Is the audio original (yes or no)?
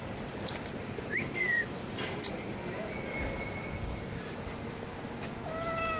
no